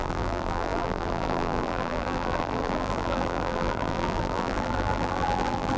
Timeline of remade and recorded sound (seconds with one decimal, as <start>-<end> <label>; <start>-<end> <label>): 0.0-5.8 remade